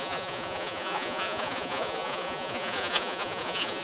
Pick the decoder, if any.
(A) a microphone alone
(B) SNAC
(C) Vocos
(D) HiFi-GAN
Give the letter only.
C